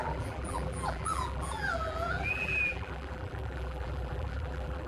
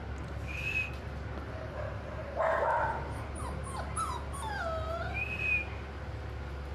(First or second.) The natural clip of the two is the second